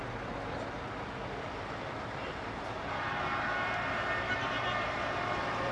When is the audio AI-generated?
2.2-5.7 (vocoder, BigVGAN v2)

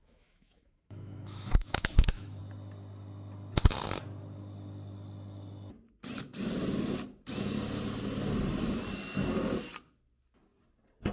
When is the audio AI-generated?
0.0-2.4 (autoencoder, DAC-VAE)

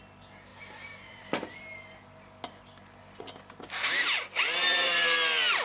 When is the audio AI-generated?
none

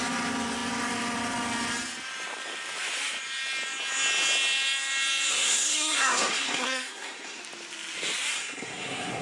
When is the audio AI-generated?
5.3-7.4 (codec, SNAC); 8.3-9.2

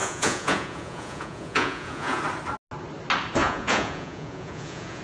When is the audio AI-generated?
0.0-2.2 (vocoder, Vocos); 3.4-5.0

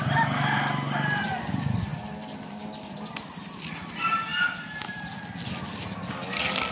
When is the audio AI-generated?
none

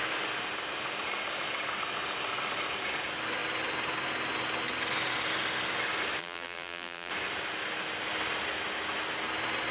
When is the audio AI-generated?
6.2-7.1 (vocoder, BigVGAN v2)

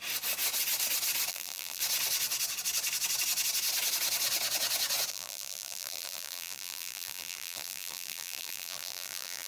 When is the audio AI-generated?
1.3-1.8 (vocoder, BigVGAN v2); 5.1-9.5